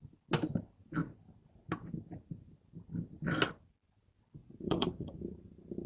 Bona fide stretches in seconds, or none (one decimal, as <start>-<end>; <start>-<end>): 0.0-4.4; 5.2-5.9